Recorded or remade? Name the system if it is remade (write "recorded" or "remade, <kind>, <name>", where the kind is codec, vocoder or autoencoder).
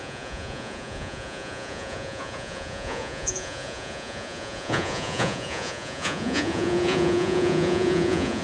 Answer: remade, vocoder, Vocos